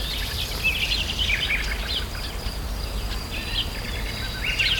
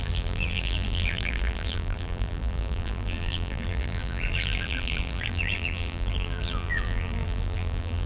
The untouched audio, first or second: first